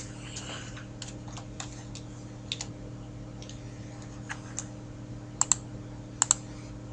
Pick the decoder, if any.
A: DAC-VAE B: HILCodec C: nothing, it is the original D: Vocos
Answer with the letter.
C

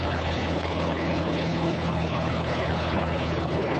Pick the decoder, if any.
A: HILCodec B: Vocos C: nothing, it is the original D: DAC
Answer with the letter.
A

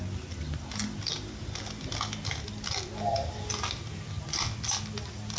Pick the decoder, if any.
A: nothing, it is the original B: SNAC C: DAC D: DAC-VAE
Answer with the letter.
A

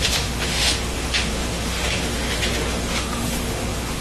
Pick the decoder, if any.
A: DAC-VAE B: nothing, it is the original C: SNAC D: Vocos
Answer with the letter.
A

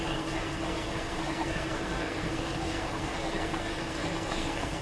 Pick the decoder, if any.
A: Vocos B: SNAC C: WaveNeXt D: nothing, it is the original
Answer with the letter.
B